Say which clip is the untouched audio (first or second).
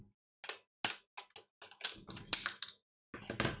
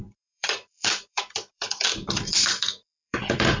first